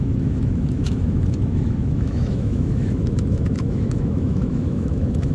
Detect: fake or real fake